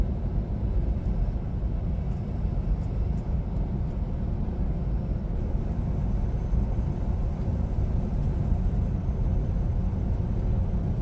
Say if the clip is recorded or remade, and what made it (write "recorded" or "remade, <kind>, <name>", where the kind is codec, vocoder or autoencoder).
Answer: recorded